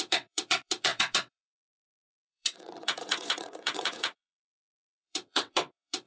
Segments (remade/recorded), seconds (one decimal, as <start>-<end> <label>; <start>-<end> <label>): 0.0-6.1 remade